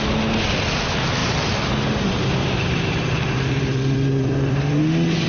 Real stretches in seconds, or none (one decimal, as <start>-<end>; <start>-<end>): 0.0-1.2; 3.1-3.7; 4.8-5.3

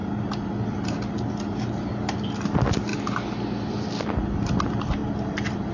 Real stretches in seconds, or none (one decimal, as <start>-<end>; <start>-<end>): 2.4-2.9; 4.6-5.0

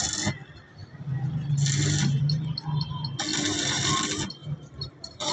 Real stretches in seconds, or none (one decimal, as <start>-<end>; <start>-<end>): 0.0-3.3; 3.9-4.4

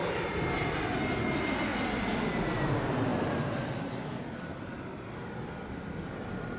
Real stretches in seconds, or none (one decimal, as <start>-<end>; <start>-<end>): 0.8-1.7; 2.2-6.6

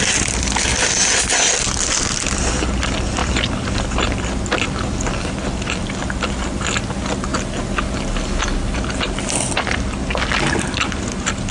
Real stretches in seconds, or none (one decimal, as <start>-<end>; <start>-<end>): 0.0-3.2; 6.3-11.5

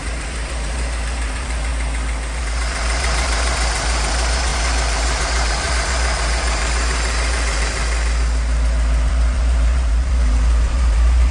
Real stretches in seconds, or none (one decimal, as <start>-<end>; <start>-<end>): 1.7-2.4; 7.8-9.1

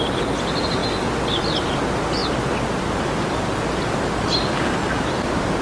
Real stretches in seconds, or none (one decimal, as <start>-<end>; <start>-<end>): 0.0-5.6